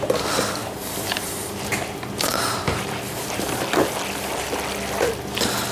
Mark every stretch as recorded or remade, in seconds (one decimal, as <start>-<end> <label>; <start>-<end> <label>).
0.0-0.6 recorded; 0.6-3.4 remade; 3.4-5.7 recorded